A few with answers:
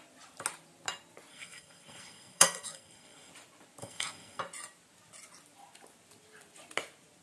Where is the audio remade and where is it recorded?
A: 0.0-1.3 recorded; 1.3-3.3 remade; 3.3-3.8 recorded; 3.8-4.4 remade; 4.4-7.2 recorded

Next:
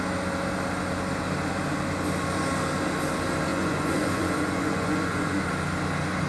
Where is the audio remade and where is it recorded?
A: 0.0-3.5 recorded; 3.5-5.4 remade; 5.4-6.3 recorded

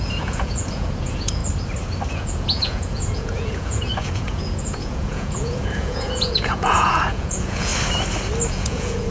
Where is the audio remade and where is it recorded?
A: 0.0-1.4 remade; 1.4-2.1 recorded; 2.1-7.7 remade; 7.7-8.5 recorded; 8.5-9.1 remade

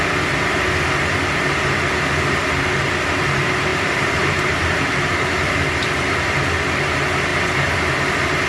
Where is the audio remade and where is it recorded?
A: 0.0-3.7 recorded; 3.7-5.7 remade; 5.7-8.5 recorded

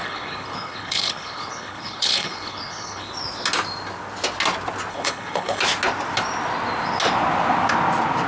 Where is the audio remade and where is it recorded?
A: 0.0-3.1 remade; 3.1-4.9 recorded; 4.9-5.6 remade; 5.6-8.3 recorded

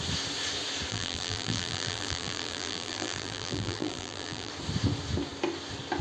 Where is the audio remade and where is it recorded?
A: 0.0-0.9 recorded; 0.9-4.5 remade; 4.5-6.0 recorded

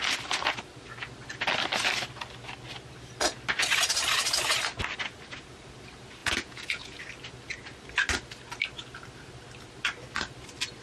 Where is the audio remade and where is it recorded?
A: 0.0-6.2 recorded; 6.2-7.0 remade; 7.0-10.8 recorded

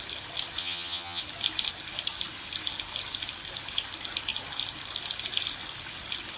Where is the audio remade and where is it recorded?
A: 0.0-0.6 recorded; 0.6-1.2 remade; 1.2-6.4 recorded